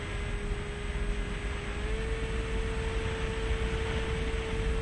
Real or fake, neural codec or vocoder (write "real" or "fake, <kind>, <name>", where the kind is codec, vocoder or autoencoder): real